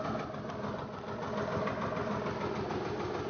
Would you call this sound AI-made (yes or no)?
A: no